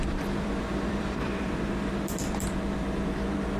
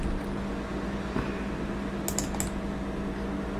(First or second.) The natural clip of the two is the second